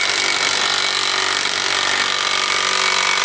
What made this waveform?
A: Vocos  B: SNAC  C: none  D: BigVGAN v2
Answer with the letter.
C